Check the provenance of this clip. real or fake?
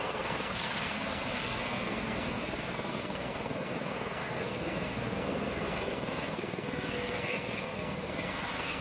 fake